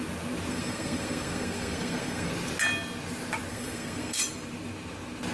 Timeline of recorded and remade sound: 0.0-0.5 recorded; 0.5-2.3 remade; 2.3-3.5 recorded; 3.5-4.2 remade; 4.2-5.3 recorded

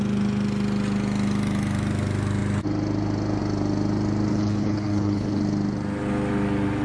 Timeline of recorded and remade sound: 0.0-4.3 recorded; 4.3-5.4 remade; 5.4-6.8 recorded

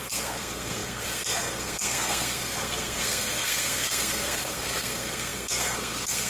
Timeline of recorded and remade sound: 0.0-6.3 remade

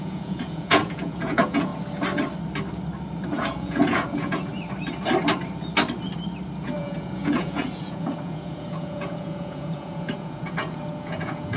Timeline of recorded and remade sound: 0.0-1.7 remade; 1.7-3.3 recorded; 3.3-4.5 remade; 4.5-6.6 recorded; 6.6-11.6 remade

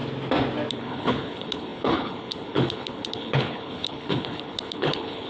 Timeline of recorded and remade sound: 0.0-0.7 recorded; 0.7-5.3 remade

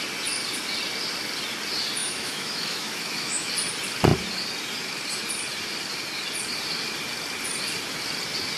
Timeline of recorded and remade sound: 0.0-2.0 recorded; 2.0-3.5 remade; 3.5-8.6 recorded

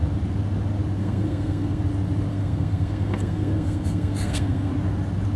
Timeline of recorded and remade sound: 0.0-1.0 recorded; 1.0-1.8 remade; 1.8-2.3 recorded; 2.3-4.7 remade; 4.7-5.4 recorded

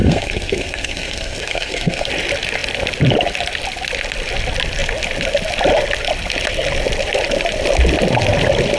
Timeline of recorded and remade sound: 0.0-2.1 remade; 2.1-8.8 recorded